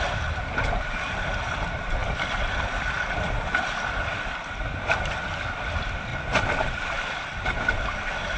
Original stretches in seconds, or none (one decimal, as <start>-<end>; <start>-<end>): 0.0-2.0; 5.1-6.1; 7.8-8.4